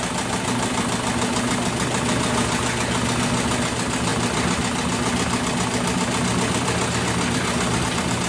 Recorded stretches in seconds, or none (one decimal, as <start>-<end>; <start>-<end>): 0.0-8.3